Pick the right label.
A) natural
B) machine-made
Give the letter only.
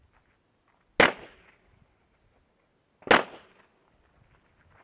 A